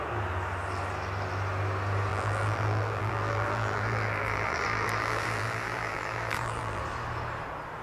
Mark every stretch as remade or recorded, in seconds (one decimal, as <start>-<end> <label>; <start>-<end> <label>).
0.0-2.1 recorded; 2.1-6.8 remade; 6.8-7.8 recorded